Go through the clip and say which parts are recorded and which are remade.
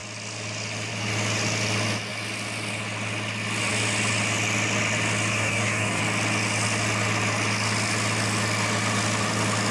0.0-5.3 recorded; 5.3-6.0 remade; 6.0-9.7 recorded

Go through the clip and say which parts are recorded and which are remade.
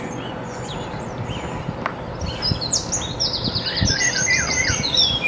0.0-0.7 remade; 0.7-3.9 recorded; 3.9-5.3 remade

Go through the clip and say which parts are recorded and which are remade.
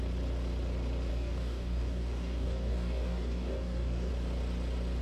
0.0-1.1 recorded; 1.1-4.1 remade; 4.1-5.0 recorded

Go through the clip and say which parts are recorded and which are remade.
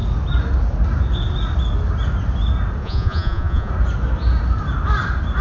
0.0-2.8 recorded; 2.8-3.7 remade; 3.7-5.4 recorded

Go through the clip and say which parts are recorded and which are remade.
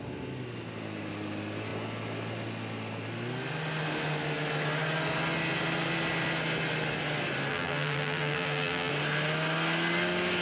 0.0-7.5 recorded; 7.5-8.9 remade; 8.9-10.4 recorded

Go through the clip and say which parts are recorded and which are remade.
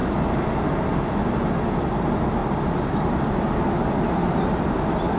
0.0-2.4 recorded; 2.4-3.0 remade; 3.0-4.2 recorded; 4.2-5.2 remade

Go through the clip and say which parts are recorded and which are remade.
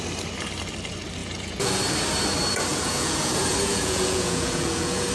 0.0-1.2 recorded; 1.2-1.8 remade; 1.8-2.7 recorded; 2.7-5.1 remade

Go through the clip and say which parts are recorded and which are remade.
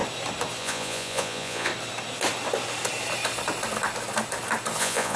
0.0-0.6 recorded; 0.6-1.7 remade; 1.7-4.8 recorded; 4.8-5.2 remade